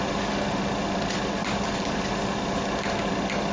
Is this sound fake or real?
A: real